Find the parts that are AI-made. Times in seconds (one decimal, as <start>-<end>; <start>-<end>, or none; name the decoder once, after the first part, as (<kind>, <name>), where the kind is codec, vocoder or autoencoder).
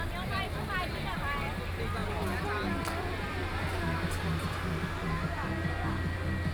none